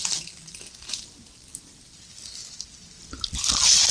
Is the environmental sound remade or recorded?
recorded